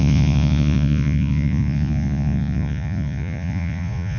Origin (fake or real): fake